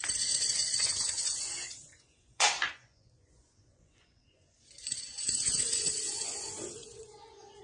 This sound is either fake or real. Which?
fake